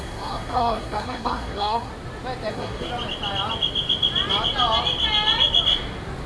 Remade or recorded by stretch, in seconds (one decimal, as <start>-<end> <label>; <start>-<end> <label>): 0.0-1.9 remade; 1.9-2.5 recorded; 2.5-2.9 remade; 2.9-6.3 recorded